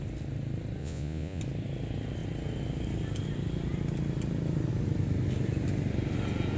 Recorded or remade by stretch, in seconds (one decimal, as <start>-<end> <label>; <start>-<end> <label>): 0.0-0.8 recorded; 0.8-1.4 remade; 1.4-6.6 recorded